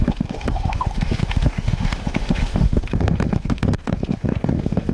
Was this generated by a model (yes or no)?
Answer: yes